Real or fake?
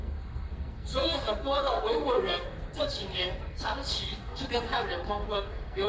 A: fake